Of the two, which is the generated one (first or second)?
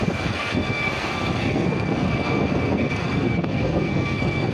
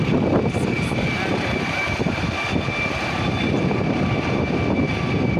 first